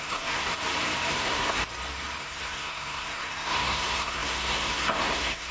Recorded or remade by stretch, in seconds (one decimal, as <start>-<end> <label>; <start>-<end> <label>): 0.0-0.5 remade; 0.5-1.1 recorded; 1.1-1.6 remade; 1.6-2.2 recorded; 2.2-5.5 remade